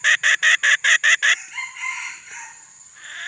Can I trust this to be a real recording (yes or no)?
yes